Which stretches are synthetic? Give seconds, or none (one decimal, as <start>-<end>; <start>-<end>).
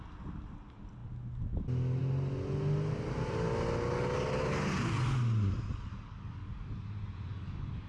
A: 5.9-6.7; 7.3-7.9